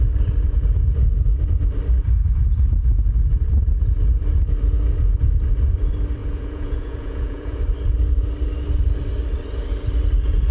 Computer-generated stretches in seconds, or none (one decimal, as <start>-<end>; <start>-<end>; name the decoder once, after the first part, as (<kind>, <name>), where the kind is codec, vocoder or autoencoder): 6.2-7.6 (vocoder, Vocos)